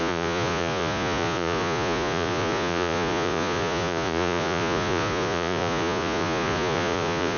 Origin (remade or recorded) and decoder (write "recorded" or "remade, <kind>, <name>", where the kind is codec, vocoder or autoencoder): remade, vocoder, Vocos